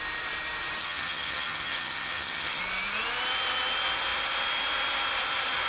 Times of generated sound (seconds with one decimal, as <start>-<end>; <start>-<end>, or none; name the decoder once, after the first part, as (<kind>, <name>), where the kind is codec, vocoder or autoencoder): 0.8-2.6 (vocoder, HiFi-GAN)